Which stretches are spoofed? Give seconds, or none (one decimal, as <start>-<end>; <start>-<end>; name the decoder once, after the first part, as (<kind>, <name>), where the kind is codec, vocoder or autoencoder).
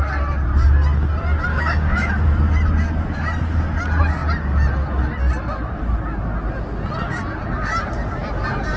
1.5-2.1 (codec, DAC)